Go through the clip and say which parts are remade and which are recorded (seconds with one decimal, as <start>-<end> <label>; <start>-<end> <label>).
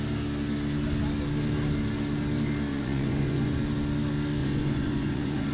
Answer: 0.0-2.7 recorded; 2.7-3.6 remade; 3.6-4.4 recorded; 4.4-5.5 remade